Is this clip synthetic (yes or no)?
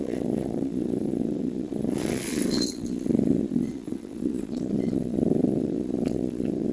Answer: yes